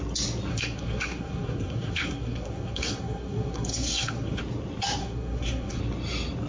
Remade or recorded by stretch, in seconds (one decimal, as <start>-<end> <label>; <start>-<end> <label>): 0.0-0.5 recorded; 0.5-4.4 remade; 4.4-5.0 recorded; 5.0-5.8 remade; 5.8-6.5 recorded